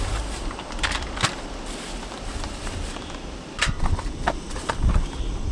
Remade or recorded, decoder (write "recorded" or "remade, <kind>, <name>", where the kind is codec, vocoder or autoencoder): recorded